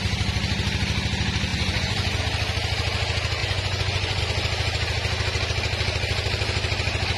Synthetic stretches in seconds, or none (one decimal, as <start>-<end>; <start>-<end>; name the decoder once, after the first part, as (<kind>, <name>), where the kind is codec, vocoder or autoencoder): 1.5-2.2 (vocoder, Vocos); 3.4-4.2